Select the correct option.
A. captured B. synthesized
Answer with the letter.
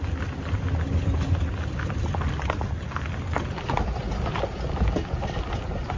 A